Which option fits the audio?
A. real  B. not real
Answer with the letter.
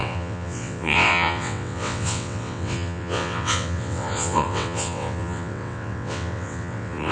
B